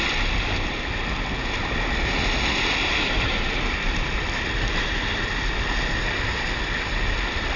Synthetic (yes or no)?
no